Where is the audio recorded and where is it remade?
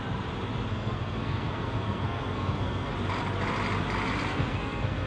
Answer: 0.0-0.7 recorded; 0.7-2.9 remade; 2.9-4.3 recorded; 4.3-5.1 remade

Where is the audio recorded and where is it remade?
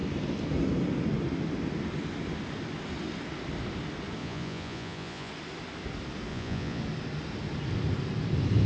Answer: 0.0-4.2 recorded; 4.2-5.3 remade; 5.3-6.3 recorded; 6.3-6.8 remade; 6.8-8.7 recorded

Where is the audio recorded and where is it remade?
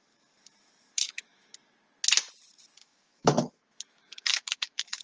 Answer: 0.0-0.8 recorded; 0.8-1.5 remade; 1.5-2.8 recorded; 2.8-5.0 remade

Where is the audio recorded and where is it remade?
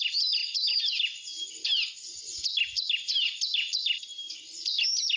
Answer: 0.0-5.2 recorded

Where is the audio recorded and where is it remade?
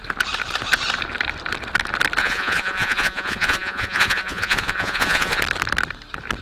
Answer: 0.0-2.2 recorded; 2.2-5.4 remade; 5.4-6.4 recorded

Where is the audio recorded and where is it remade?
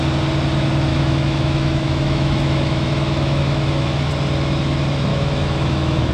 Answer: 0.0-0.9 recorded; 0.9-4.1 remade; 4.1-5.1 recorded; 5.1-6.1 remade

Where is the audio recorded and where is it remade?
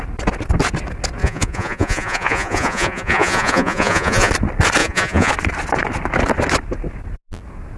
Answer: 0.0-1.2 recorded; 1.2-4.3 remade; 4.3-4.8 recorded; 4.8-5.3 remade; 5.3-7.8 recorded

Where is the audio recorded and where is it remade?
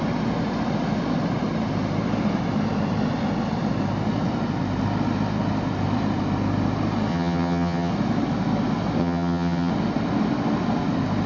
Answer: 0.0-7.1 recorded; 7.1-7.9 remade; 7.9-9.0 recorded; 9.0-9.7 remade; 9.7-11.3 recorded